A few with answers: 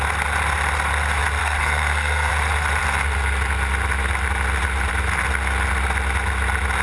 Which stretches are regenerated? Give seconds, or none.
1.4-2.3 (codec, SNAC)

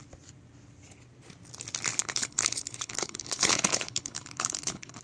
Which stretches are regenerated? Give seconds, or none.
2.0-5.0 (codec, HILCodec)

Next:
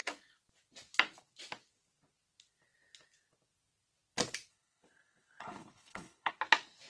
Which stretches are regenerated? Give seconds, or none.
4.5-6.3 (codec, HILCodec)

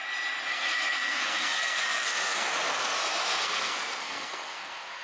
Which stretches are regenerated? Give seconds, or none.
0.5-2.5 (codec, SNAC); 3.0-5.0

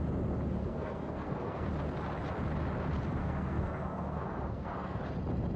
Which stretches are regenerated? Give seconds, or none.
0.6-1.7 (codec, SNAC); 3.2-5.0

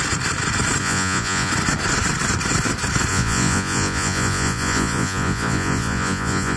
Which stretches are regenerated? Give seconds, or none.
0.8-1.5 (vocoder, Vocos); 3.1-6.6